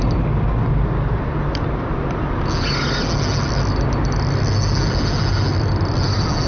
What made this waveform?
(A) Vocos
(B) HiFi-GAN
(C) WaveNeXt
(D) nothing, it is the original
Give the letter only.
D